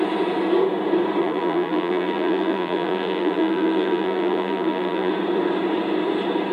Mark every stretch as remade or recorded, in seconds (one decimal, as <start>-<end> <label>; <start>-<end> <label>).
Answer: 0.0-1.2 recorded; 1.2-5.1 remade; 5.1-6.5 recorded